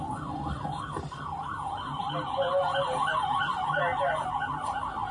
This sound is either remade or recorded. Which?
recorded